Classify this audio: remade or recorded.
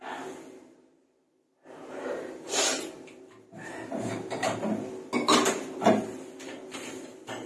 recorded